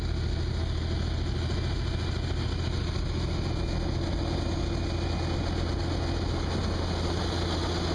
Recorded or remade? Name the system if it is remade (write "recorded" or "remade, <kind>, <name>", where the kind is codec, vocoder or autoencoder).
recorded